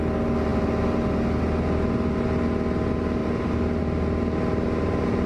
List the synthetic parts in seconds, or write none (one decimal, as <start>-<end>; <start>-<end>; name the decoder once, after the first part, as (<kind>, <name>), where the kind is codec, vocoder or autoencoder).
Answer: none